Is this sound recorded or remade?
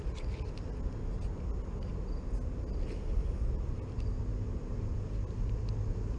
recorded